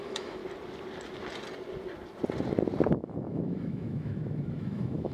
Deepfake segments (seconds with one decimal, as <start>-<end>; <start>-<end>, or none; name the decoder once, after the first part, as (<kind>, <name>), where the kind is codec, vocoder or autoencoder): 0.0-0.4 (autoencoder, DAC-VAE); 2.9-5.1